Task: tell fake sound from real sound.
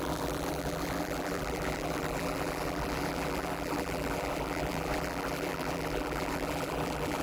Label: fake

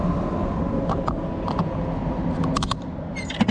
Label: real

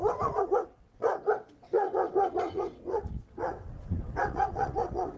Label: fake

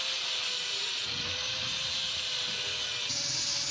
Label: fake